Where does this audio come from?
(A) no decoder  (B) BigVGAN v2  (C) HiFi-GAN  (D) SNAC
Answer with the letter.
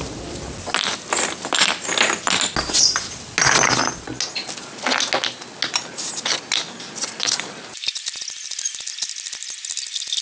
A